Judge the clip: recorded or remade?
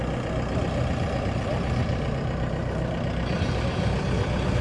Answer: recorded